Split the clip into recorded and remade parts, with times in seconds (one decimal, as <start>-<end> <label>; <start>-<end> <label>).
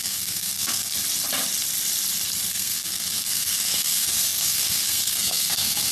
0.0-0.9 remade; 0.9-2.5 recorded; 2.5-5.9 remade